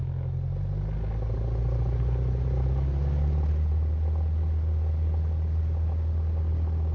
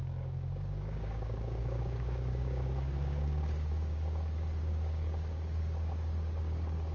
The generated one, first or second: second